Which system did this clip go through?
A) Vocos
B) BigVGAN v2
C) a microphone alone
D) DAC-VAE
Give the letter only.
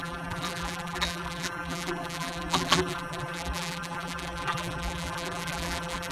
B